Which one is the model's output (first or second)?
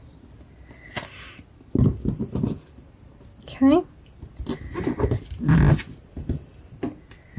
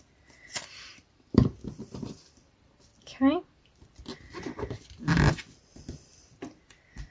second